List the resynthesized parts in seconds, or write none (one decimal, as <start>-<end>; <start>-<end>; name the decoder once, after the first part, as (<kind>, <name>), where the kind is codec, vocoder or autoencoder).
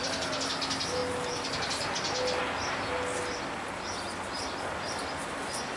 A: none